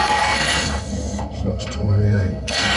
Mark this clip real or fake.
fake